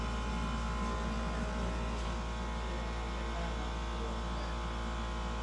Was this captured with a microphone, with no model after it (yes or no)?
yes